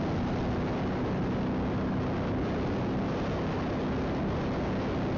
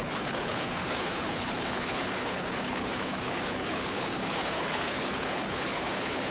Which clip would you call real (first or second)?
first